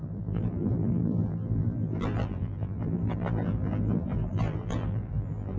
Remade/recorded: remade